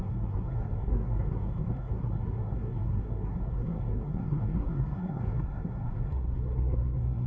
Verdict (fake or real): fake